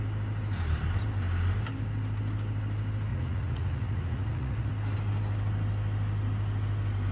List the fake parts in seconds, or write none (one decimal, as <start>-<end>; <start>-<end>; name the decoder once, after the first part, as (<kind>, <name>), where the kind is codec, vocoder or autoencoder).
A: 3.1-4.7 (vocoder, Vocos)